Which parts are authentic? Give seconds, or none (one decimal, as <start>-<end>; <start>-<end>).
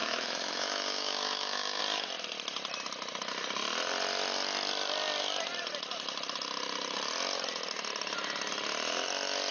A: 1.8-9.5